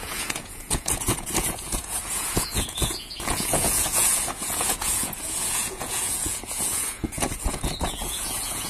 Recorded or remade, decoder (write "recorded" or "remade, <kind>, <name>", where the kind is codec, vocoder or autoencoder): remade, vocoder, Vocos